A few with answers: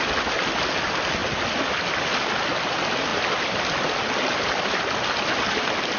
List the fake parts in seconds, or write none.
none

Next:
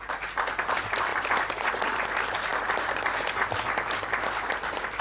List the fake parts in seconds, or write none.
none